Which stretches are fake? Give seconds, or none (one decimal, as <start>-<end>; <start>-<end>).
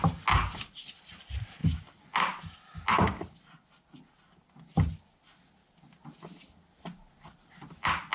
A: none